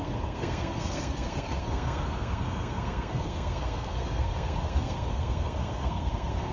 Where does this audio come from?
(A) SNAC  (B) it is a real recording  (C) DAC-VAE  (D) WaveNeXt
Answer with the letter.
A